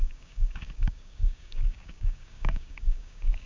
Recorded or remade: remade